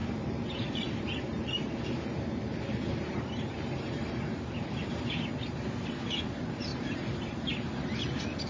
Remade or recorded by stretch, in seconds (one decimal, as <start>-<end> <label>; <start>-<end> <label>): 0.0-5.1 remade; 5.1-6.7 recorded; 6.7-7.5 remade; 7.5-8.5 recorded